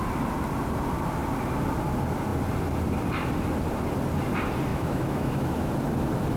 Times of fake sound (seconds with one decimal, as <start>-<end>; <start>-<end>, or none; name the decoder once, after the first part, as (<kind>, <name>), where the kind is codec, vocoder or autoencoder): 4.7-5.7 (autoencoder, DAC-VAE)